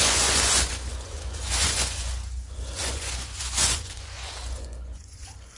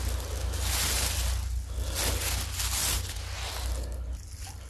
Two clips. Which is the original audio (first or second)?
second